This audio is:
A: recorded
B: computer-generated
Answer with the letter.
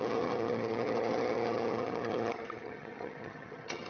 B